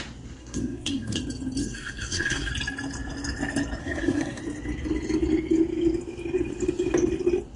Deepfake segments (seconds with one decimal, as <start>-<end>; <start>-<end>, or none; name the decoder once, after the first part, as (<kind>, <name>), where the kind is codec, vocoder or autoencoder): 0.4-1.2 (codec, SNAC); 1.6-2.5; 3.8-4.4